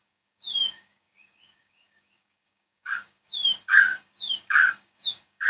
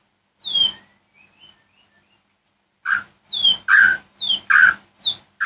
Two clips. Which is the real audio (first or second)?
second